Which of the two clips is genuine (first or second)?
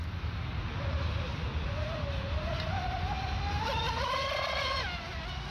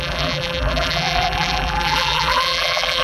first